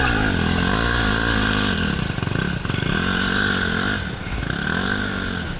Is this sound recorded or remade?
recorded